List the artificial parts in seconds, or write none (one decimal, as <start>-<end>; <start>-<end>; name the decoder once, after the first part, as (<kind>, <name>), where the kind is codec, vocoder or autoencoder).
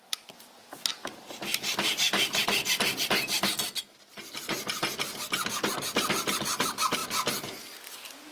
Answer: none